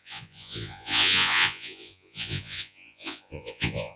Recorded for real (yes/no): no